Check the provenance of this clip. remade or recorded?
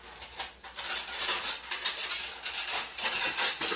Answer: recorded